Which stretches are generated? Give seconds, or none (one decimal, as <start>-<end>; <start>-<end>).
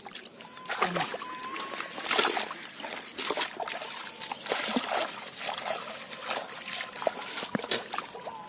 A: none